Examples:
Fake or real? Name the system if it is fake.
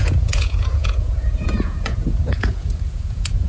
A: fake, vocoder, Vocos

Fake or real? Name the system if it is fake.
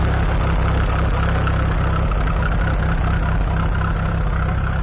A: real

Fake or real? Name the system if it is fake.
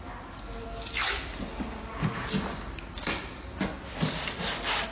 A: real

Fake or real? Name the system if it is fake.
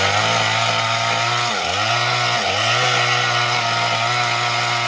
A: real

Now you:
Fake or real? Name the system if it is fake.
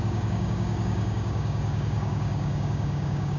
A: fake, codec, DAC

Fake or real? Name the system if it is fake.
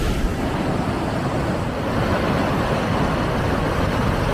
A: real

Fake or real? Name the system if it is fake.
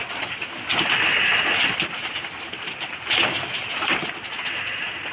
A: real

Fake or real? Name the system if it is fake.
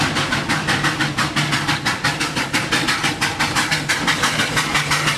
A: real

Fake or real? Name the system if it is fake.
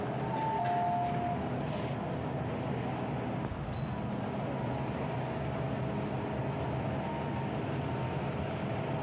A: real